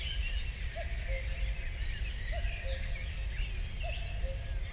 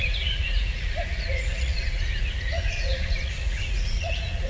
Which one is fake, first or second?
second